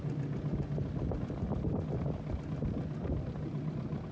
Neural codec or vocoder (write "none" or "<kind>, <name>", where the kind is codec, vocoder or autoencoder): none